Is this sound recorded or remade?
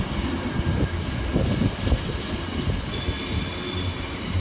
recorded